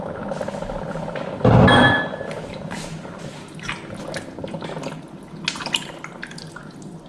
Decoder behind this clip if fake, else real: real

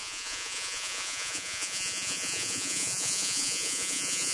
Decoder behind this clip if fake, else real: fake, vocoder, Vocos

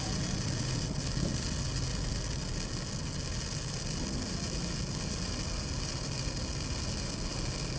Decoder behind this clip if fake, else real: real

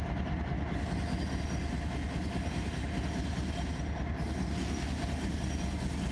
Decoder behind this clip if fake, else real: real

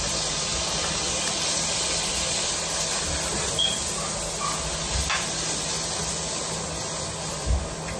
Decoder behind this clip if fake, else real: real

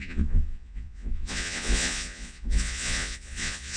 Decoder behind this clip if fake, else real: fake, vocoder, Vocos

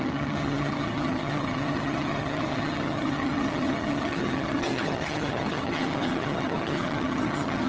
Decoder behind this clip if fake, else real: fake, vocoder, HiFi-GAN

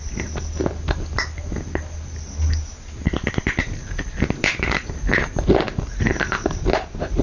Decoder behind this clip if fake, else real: real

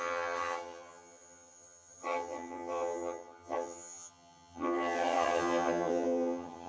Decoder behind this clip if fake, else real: fake, vocoder, HiFi-GAN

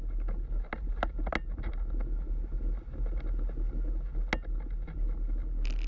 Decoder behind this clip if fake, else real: real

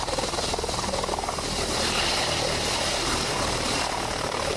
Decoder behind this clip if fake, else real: real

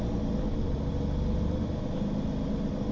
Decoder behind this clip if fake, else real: real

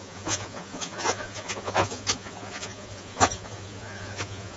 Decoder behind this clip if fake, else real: fake, vocoder, Vocos